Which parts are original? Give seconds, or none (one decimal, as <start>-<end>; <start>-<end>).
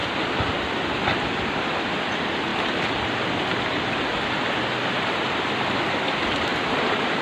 0.5-6.5